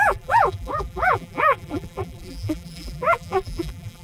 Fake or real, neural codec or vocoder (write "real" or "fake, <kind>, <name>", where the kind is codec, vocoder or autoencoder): fake, vocoder, BigVGAN v2